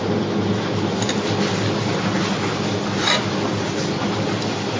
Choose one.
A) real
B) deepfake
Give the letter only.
A